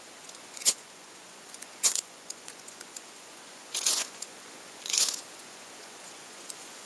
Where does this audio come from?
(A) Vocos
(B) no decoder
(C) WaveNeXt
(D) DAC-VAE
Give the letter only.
A